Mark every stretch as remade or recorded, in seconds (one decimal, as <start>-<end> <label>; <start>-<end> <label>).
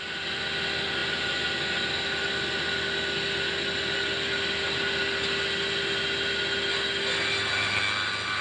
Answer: 0.0-8.4 recorded